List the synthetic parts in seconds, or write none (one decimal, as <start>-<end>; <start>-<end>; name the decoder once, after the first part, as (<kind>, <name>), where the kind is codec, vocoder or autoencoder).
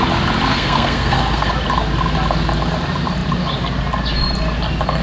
0.5-1.5 (codec, SNAC)